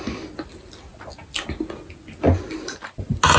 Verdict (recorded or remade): recorded